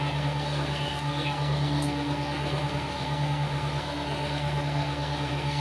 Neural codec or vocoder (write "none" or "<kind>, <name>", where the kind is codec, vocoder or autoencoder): codec, SNAC